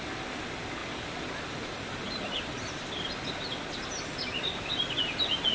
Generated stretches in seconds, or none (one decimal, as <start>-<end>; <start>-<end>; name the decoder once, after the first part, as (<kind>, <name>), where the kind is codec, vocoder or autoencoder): 0.8-4.1 (vocoder, BigVGAN v2)